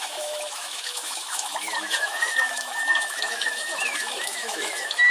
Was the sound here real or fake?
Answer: fake